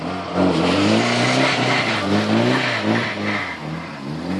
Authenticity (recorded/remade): recorded